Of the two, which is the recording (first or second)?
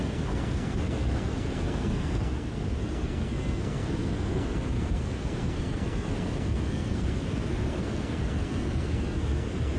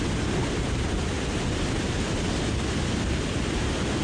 second